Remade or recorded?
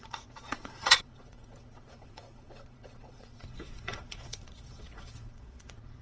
remade